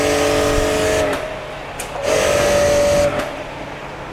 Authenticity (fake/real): real